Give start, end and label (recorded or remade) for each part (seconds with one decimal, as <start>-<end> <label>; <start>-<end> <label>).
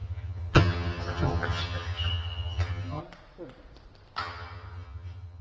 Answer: 0.0-3.0 remade; 3.0-4.2 recorded; 4.2-5.4 remade